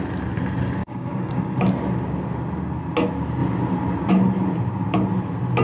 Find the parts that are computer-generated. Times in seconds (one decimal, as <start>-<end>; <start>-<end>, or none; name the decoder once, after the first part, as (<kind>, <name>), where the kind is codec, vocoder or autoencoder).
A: 0.8-1.6 (codec, DAC)